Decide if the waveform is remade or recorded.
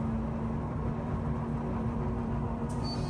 recorded